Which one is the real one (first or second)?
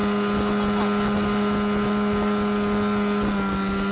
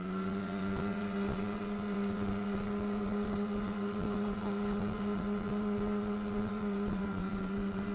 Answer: first